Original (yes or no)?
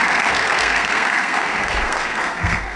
no